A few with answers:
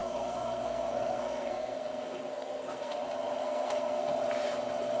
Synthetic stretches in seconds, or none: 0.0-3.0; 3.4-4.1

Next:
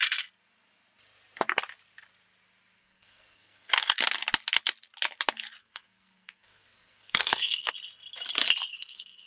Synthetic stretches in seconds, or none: 2.8-4.0; 5.6-7.7; 8.7-9.3

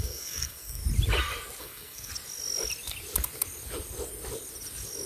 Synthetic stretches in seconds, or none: 0.0-0.8; 1.6-2.1

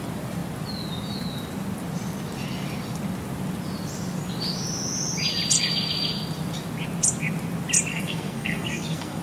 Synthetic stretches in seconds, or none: 7.9-9.2

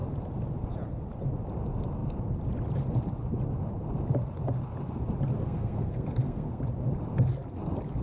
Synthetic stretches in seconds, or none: 5.4-6.6

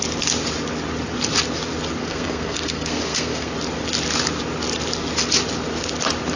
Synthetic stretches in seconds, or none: 2.0-3.5